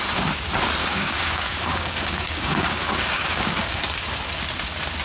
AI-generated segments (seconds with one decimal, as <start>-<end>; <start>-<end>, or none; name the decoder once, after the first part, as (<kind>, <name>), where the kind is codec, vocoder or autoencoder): 0.8-3.8 (codec, DAC)